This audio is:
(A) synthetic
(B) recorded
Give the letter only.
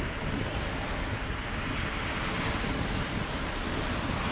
B